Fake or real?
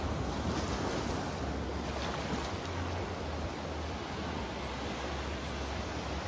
real